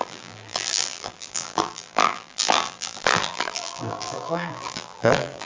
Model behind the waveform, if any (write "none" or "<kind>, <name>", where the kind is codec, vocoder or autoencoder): vocoder, BigVGAN v2